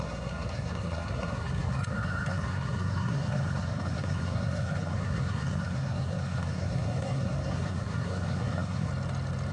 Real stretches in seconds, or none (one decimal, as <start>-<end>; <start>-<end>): 8.9-9.5